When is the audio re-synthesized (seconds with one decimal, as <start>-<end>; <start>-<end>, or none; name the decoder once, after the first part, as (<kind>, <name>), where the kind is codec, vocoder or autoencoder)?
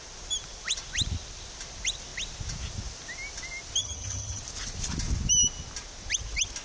3.8-4.4 (vocoder, HiFi-GAN)